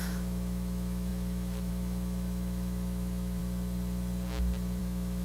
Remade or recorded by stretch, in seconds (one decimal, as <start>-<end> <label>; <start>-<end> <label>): 0.0-3.4 remade; 3.4-4.8 recorded; 4.8-5.2 remade